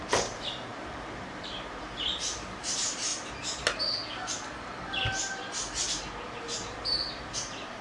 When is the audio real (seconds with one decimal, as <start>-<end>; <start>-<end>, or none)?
3.1-6.4